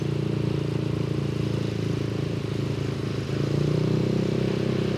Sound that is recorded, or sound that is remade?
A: recorded